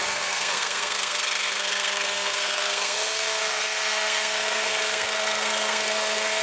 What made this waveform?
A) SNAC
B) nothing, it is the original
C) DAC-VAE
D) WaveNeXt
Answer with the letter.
A